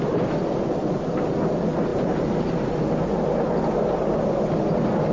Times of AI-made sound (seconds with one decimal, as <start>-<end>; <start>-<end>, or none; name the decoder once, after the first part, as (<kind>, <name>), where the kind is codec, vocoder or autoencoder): none